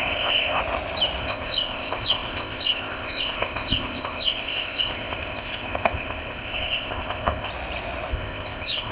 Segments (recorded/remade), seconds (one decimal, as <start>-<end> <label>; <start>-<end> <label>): 0.0-0.6 remade; 0.6-1.2 recorded; 1.2-7.5 remade; 7.5-8.1 recorded; 8.1-8.9 remade